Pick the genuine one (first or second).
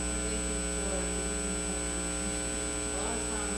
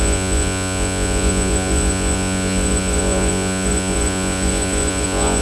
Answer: first